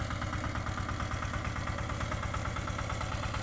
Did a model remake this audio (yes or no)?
no